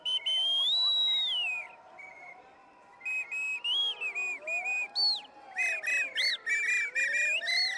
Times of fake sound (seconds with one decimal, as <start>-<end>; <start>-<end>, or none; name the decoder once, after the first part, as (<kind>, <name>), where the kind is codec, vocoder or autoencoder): none